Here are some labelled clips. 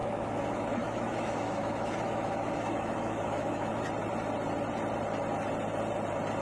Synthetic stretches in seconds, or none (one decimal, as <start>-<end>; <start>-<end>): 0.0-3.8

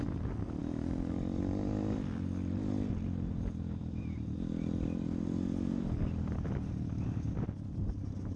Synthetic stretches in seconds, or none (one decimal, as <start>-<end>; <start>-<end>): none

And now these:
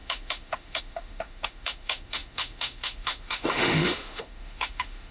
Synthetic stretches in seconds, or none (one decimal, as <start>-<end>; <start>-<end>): 0.0-5.1

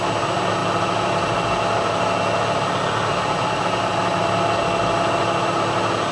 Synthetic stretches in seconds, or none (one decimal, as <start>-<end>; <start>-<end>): none